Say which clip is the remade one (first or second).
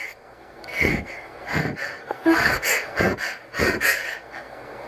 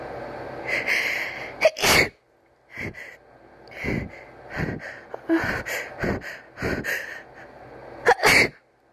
first